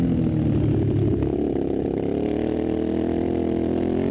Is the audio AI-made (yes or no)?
no